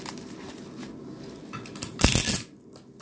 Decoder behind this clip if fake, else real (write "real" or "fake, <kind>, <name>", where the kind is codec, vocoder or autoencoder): real